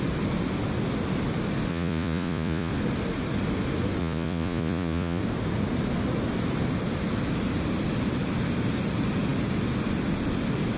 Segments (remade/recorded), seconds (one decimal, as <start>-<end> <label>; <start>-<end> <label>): 0.0-1.7 recorded; 1.7-2.7 remade; 2.7-4.0 recorded; 4.0-5.2 remade; 5.2-10.8 recorded